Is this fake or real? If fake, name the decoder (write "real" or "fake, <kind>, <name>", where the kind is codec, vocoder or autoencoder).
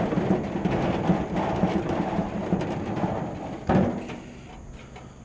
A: real